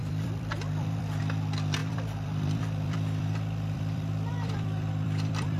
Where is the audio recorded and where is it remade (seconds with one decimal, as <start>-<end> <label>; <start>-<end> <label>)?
0.0-1.2 remade; 1.2-1.8 recorded; 1.8-5.6 remade